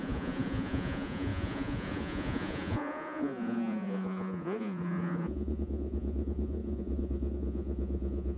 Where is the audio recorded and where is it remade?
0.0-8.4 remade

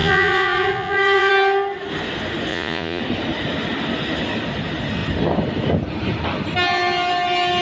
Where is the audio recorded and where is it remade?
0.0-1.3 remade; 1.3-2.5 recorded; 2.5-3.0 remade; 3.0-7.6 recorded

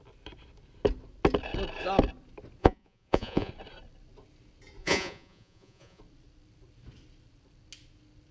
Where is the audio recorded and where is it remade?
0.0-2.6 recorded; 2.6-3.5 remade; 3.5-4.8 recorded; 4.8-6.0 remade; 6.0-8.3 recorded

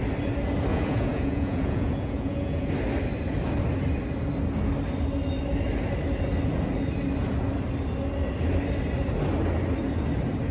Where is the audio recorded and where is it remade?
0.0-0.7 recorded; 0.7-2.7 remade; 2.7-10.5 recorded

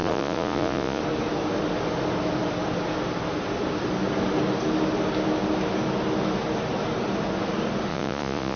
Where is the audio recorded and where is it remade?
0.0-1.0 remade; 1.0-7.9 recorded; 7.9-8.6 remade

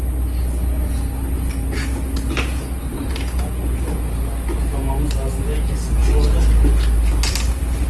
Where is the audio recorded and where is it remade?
0.0-7.9 recorded